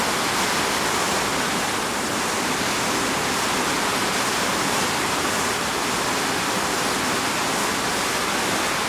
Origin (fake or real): real